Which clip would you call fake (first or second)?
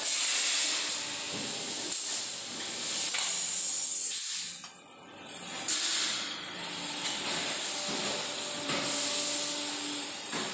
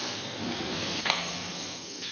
second